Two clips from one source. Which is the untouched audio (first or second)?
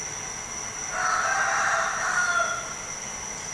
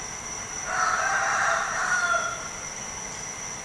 first